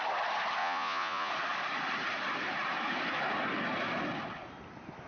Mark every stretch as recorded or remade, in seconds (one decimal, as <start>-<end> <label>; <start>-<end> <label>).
0.0-0.6 recorded; 0.6-1.3 remade; 1.3-5.1 recorded